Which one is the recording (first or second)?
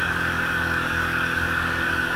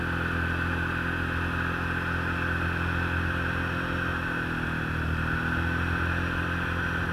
second